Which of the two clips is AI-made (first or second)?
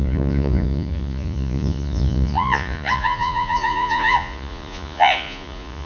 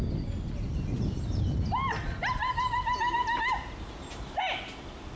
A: first